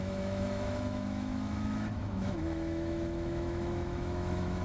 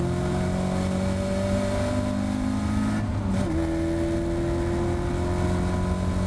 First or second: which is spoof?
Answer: first